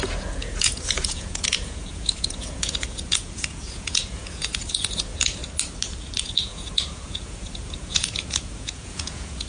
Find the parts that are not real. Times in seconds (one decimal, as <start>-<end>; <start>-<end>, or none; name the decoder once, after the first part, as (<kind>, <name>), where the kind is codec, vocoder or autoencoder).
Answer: 0.0-5.4 (vocoder, Vocos); 6.2-9.5